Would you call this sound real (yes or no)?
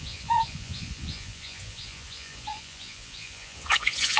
no